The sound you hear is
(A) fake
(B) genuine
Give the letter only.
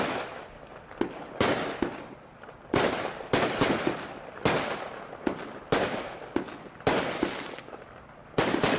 B